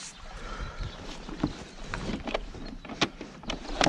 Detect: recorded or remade remade